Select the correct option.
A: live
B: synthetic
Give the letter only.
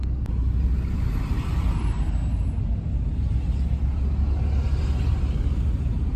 A